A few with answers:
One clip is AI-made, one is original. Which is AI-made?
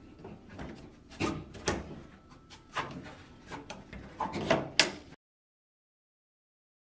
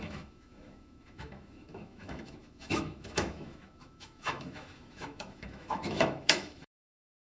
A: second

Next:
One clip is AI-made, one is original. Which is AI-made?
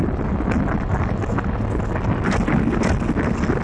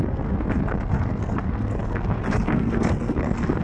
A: second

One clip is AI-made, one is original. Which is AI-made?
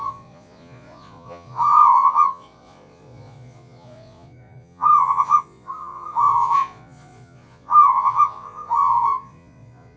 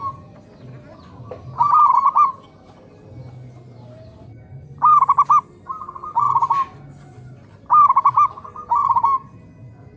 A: first